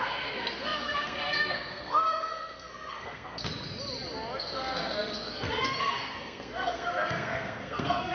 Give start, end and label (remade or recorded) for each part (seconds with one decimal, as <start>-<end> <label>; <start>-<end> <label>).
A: 0.0-3.5 remade; 3.5-4.4 recorded; 4.4-8.1 remade